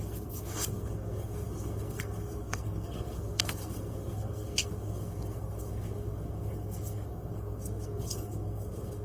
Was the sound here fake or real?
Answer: fake